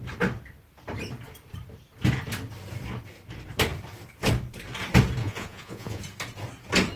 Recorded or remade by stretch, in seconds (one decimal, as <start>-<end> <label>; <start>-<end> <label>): 0.0-5.2 recorded; 5.2-6.0 remade; 6.0-7.0 recorded